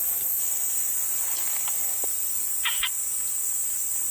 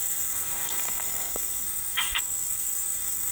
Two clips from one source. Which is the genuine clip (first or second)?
first